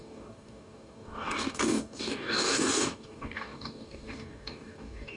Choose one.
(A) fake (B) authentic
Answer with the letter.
A